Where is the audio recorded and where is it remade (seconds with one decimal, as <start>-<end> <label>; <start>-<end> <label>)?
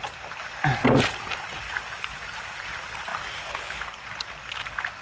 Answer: 0.0-5.0 recorded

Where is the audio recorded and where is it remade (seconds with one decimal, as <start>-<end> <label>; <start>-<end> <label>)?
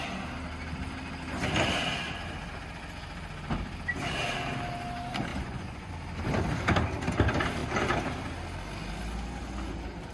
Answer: 0.0-5.3 recorded; 5.3-5.9 remade; 5.9-10.1 recorded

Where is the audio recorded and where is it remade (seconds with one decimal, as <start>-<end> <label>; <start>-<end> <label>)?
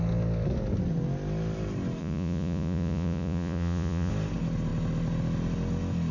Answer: 0.0-2.0 recorded; 2.0-4.1 remade; 4.1-6.1 recorded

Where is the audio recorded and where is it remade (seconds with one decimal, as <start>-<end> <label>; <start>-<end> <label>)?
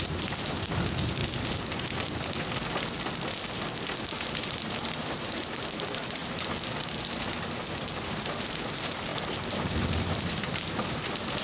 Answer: 0.0-1.2 remade; 1.2-4.5 recorded; 4.5-6.2 remade; 6.2-8.5 recorded; 8.5-11.4 remade